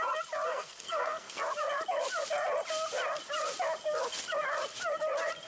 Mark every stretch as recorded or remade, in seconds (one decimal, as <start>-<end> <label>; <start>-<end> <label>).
0.0-0.5 recorded; 0.5-1.4 remade; 1.4-5.5 recorded